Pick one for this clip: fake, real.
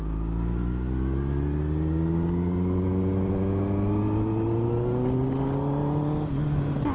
real